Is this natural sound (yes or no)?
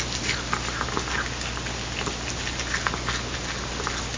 yes